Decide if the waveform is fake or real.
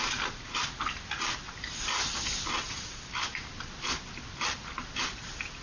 real